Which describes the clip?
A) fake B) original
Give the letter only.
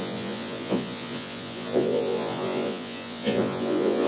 A